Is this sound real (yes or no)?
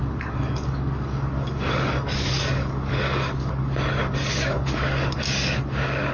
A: no